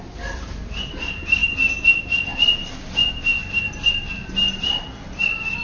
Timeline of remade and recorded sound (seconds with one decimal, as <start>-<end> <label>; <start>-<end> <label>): 0.0-1.4 remade; 1.4-4.8 recorded; 4.8-5.6 remade